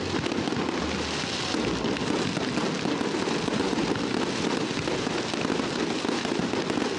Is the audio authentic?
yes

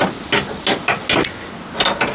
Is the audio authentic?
yes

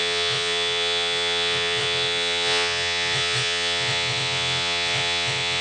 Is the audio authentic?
no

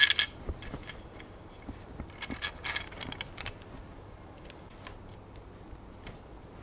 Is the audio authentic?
yes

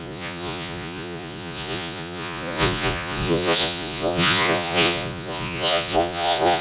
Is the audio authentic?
no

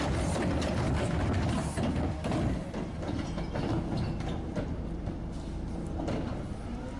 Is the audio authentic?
yes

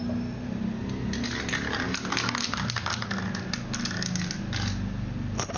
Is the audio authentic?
yes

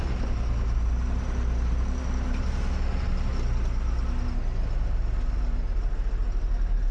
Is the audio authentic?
yes